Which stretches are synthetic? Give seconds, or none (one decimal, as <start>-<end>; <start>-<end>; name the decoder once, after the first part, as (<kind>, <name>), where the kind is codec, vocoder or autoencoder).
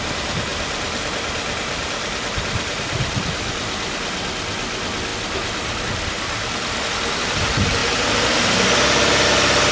0.5-1.0 (vocoder, BigVGAN v2); 1.8-4.2